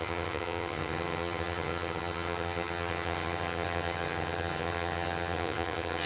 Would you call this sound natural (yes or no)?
no